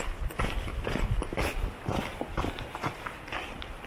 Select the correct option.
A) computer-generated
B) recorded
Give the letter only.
B